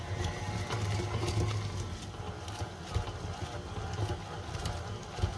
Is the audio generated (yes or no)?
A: no